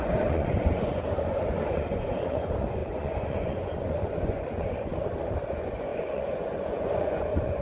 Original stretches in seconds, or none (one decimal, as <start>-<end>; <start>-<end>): 4.9-5.5